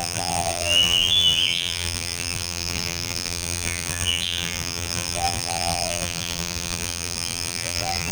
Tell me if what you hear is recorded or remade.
remade